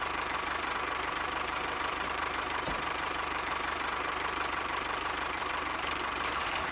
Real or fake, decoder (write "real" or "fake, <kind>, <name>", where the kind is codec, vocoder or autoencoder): fake, vocoder, BigVGAN v2